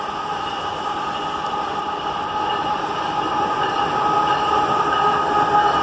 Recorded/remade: recorded